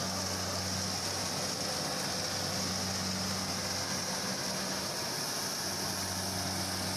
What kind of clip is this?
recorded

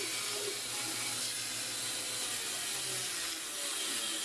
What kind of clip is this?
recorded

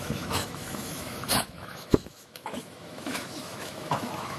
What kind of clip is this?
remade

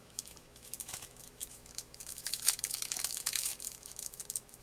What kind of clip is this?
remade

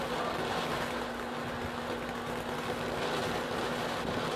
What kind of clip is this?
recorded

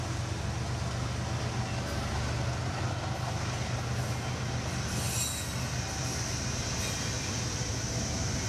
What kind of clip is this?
recorded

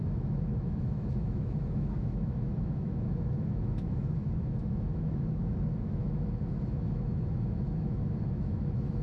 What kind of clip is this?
remade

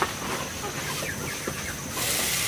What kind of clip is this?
recorded